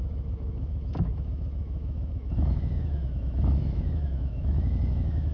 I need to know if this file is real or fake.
fake